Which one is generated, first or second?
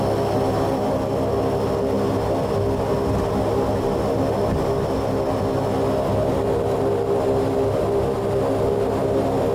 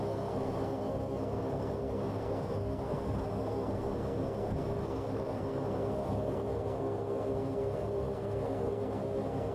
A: second